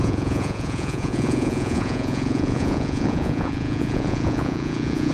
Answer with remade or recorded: remade